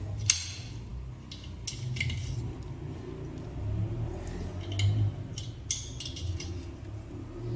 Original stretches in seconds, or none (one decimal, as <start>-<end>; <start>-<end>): 0.0-7.6